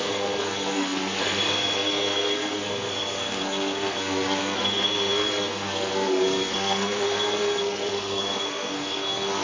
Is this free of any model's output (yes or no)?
no